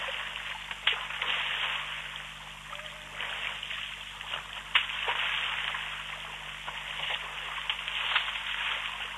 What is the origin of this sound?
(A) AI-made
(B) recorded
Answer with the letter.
B